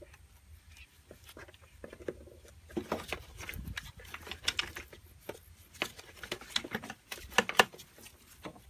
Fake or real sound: real